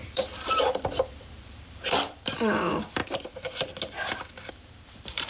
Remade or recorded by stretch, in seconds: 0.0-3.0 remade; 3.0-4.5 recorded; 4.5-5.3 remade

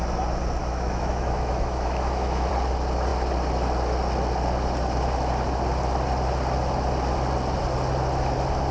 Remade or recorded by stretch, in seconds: 0.0-0.6 recorded; 0.6-2.5 remade; 2.5-8.7 recorded

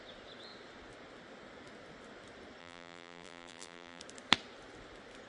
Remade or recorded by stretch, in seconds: 0.0-2.6 recorded; 2.6-4.0 remade; 4.0-5.3 recorded

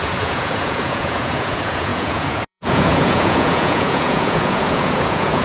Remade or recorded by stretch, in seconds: 0.0-5.4 remade

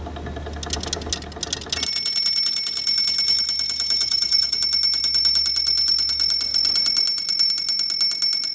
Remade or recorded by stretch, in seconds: 0.0-4.0 recorded; 4.0-4.6 remade; 4.6-8.5 recorded